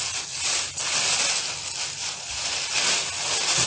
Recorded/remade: recorded